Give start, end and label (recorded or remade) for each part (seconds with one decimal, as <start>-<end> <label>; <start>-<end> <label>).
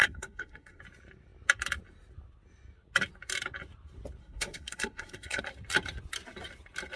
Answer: 0.0-0.8 remade; 0.8-4.2 recorded; 4.2-5.4 remade; 5.4-7.0 recorded